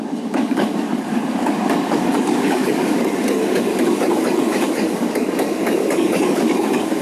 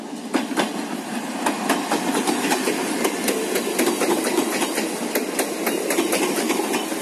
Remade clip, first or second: first